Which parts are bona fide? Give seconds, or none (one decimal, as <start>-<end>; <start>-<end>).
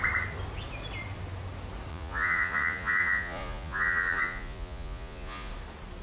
0.0-1.9; 5.5-6.0